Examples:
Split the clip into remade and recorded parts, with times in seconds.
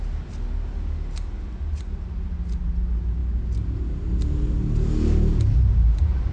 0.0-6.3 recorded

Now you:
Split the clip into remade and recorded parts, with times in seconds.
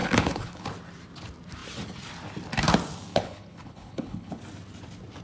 0.0-0.7 remade; 0.7-3.1 recorded; 3.1-4.4 remade; 4.4-5.2 recorded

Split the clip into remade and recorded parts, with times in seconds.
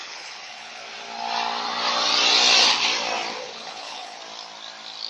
0.0-0.8 remade; 0.8-3.4 recorded; 3.4-4.2 remade; 4.2-5.1 recorded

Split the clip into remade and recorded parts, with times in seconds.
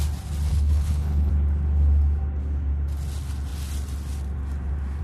0.0-0.5 recorded; 0.5-1.3 remade; 1.3-5.0 recorded